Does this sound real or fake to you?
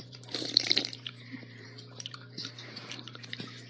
fake